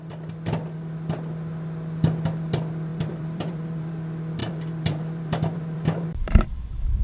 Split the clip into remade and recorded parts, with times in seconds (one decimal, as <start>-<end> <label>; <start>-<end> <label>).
0.0-2.9 recorded; 2.9-3.9 remade; 3.9-4.4 recorded; 4.4-7.0 remade